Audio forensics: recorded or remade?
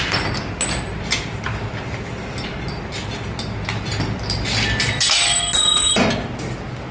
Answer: recorded